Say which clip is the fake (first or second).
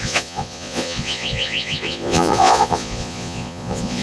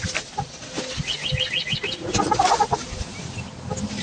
first